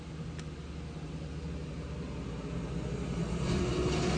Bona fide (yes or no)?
yes